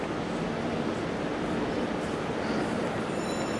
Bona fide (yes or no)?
no